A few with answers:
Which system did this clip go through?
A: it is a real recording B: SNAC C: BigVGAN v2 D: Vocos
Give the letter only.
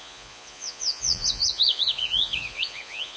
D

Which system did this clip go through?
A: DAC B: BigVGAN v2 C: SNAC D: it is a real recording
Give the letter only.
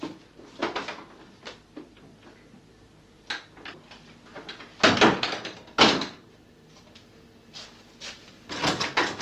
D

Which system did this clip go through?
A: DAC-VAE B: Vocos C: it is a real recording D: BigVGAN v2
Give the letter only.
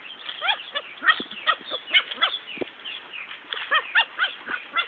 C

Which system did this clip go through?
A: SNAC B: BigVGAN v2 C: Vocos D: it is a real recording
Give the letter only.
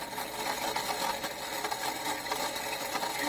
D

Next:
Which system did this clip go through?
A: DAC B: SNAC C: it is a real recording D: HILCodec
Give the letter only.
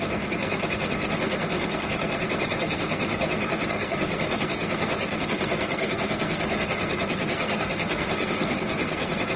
B